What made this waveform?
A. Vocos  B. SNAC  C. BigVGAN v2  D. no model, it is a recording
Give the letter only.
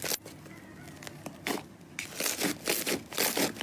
D